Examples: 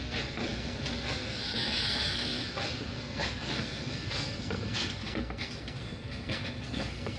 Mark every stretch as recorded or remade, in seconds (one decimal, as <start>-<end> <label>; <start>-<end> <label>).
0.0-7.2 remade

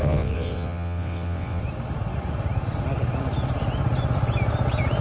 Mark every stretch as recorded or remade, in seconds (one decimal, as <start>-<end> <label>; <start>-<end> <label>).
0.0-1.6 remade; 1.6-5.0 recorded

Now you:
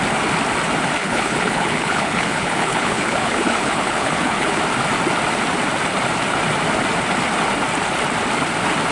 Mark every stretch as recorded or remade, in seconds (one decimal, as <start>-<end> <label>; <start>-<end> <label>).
0.0-1.0 recorded; 1.0-4.6 remade; 4.6-8.9 recorded

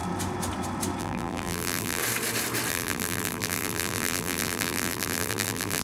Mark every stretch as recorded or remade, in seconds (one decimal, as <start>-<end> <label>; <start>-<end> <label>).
0.0-1.0 recorded; 1.0-2.0 remade; 2.0-2.7 recorded; 2.7-5.8 remade